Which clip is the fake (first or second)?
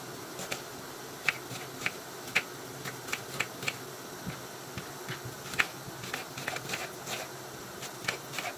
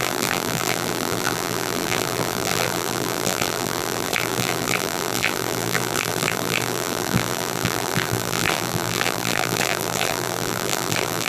second